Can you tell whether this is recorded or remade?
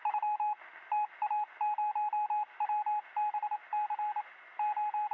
recorded